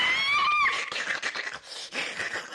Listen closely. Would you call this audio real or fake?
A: real